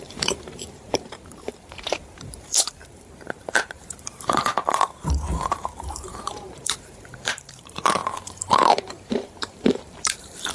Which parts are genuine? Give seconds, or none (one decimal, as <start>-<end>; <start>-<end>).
none